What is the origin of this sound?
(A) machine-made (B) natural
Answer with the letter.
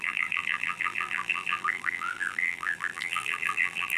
A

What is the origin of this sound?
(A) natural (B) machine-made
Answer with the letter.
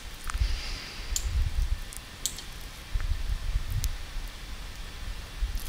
A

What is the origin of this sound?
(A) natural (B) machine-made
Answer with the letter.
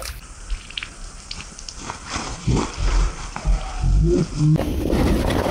B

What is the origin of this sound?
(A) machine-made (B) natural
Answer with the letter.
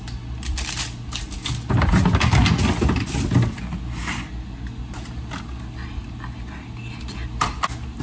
B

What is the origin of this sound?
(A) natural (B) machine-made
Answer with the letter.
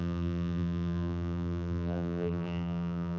B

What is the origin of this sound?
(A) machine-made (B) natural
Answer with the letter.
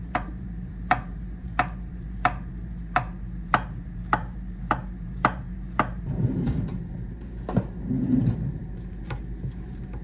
A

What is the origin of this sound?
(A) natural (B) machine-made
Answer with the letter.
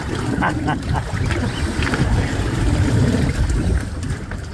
B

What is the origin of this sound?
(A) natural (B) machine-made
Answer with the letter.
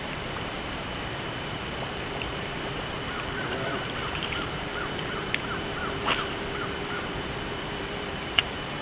B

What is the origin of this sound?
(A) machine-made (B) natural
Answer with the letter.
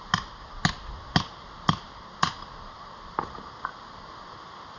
B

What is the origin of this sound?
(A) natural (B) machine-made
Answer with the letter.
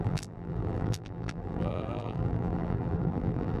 B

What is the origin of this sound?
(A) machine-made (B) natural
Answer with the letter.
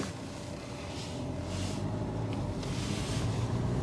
B